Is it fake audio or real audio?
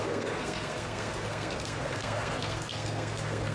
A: fake